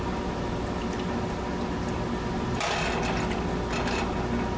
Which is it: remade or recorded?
recorded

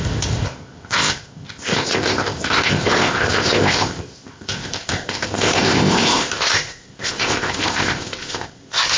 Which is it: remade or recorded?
remade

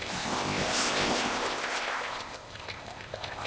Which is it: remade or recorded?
remade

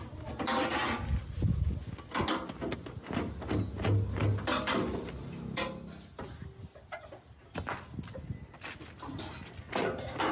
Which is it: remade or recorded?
recorded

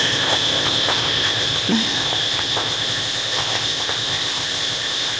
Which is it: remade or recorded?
remade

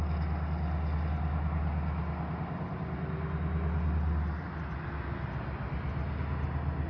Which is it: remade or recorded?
recorded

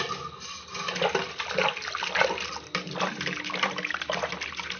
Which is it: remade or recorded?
recorded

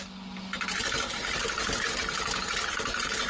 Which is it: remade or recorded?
recorded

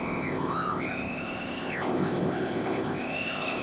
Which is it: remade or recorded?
remade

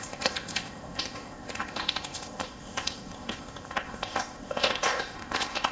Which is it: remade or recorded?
remade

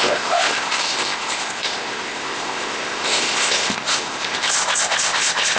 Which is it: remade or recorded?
remade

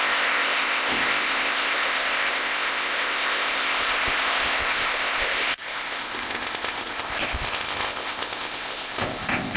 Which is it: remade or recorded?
remade